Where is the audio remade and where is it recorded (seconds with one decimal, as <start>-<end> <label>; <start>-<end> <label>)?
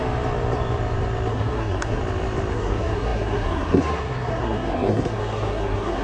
0.0-1.3 recorded; 1.3-2.0 remade; 2.0-2.5 recorded; 2.5-6.0 remade